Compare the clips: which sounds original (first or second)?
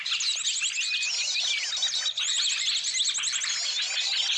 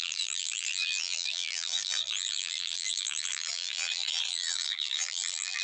first